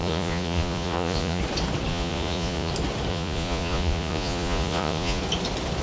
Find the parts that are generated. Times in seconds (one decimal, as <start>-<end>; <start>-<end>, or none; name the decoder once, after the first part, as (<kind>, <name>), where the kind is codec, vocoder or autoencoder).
0.0-1.4 (vocoder, Vocos); 1.9-2.7; 3.1-5.2